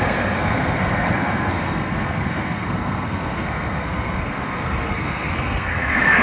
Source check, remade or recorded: remade